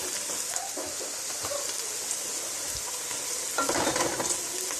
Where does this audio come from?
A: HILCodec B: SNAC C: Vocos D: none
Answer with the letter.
D